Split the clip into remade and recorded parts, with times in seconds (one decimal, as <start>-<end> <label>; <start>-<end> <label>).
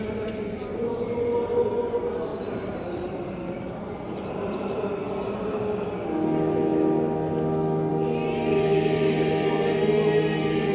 0.0-2.3 recorded; 2.3-4.8 remade; 4.8-10.7 recorded